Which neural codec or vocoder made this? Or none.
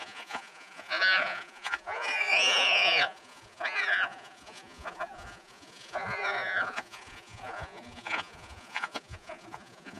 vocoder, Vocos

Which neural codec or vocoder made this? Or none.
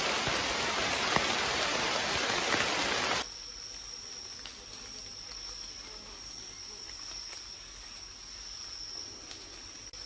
none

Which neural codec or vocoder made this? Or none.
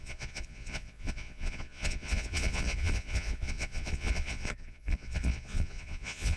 vocoder, Vocos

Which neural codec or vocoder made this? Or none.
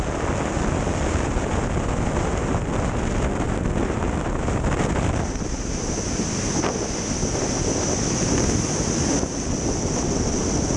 none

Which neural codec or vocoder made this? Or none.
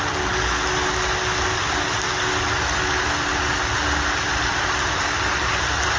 none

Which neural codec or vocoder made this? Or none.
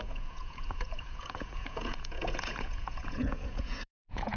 vocoder, Vocos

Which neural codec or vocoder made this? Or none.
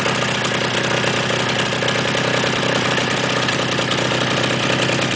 none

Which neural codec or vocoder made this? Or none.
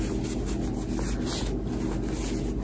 none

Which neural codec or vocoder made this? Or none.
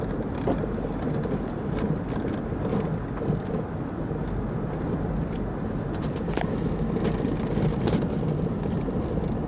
none